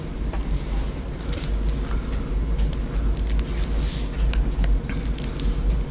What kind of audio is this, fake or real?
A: real